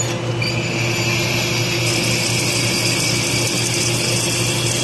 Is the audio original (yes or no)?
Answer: yes